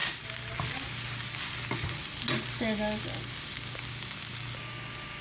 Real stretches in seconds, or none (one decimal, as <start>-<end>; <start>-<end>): 0.0-5.2